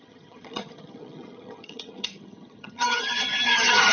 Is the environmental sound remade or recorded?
remade